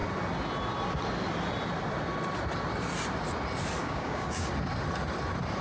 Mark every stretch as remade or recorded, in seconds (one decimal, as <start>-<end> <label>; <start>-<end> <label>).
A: 0.0-3.8 recorded; 3.8-4.5 remade; 4.5-5.6 recorded